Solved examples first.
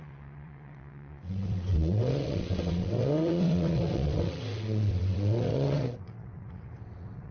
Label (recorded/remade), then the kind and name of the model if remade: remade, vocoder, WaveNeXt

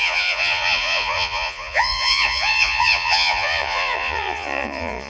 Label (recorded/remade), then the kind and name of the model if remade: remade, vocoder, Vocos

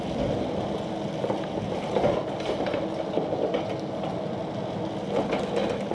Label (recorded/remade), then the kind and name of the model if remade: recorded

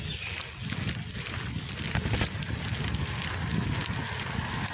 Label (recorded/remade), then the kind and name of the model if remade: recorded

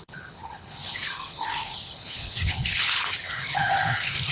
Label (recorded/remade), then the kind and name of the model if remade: remade, codec, HILCodec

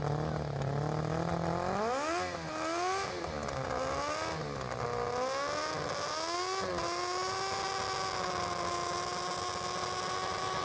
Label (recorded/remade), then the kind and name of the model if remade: recorded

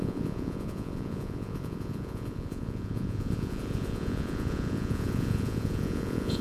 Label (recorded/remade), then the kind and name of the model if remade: remade, vocoder, Vocos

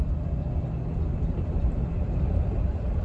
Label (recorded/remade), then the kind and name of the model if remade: recorded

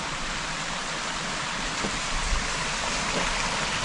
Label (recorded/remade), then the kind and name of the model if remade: remade, vocoder, BigVGAN v2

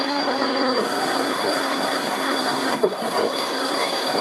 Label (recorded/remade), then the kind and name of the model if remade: remade, codec, SNAC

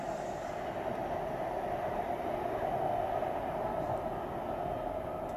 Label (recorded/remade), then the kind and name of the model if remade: recorded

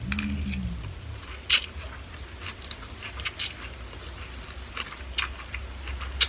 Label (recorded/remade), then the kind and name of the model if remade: recorded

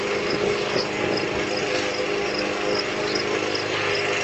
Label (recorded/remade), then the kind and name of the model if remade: recorded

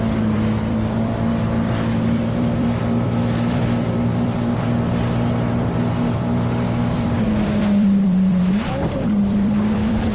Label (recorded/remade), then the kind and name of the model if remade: remade, vocoder, BigVGAN v2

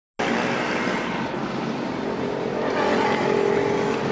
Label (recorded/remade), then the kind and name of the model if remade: recorded